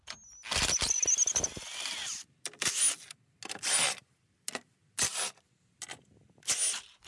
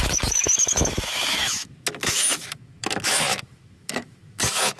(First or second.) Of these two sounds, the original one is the first